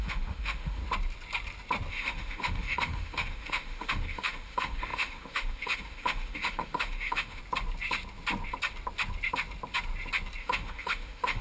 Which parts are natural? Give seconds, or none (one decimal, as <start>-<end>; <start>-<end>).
0.8-1.9; 7.4-10.4

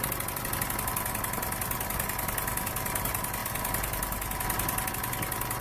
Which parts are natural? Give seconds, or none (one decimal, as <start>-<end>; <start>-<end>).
0.0-5.6

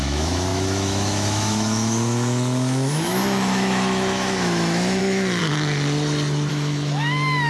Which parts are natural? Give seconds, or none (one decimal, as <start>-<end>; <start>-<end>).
5.4-6.5

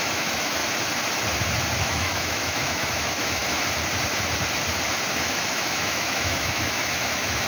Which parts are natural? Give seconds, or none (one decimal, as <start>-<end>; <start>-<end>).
0.6-1.8; 3.4-5.1

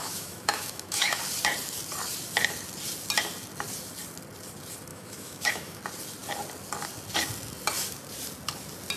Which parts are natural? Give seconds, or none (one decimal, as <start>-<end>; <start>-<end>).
1.2-4.9; 5.8-9.0

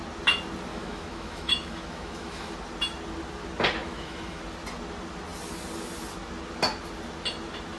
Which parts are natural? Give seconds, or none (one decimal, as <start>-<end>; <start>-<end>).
0.0-0.7; 2.5-3.8; 4.4-7.8

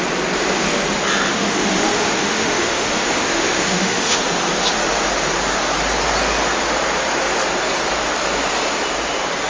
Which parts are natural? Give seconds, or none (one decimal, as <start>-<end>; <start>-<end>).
0.0-1.3; 4.2-9.5